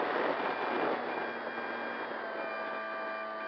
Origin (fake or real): real